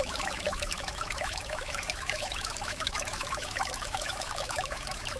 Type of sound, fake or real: fake